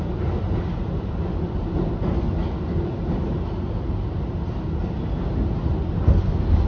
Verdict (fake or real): real